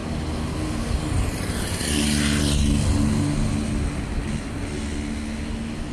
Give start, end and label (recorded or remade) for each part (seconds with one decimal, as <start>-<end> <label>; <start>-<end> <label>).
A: 0.0-5.9 recorded